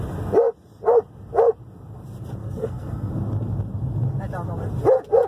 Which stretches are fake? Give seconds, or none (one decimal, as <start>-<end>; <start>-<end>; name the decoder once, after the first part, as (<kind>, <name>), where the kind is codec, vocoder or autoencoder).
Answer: 2.4-3.1 (codec, SNAC)